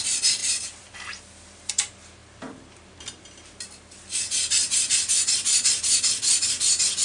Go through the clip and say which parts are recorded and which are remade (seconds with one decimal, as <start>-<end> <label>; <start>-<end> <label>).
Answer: 0.0-0.4 recorded; 0.4-1.7 remade; 1.7-2.2 recorded; 2.2-2.9 remade; 2.9-7.0 recorded